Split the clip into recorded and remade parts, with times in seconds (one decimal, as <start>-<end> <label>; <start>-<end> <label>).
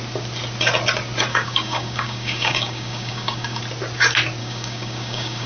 0.0-1.3 recorded; 1.3-3.6 remade; 3.6-4.4 recorded; 4.4-5.5 remade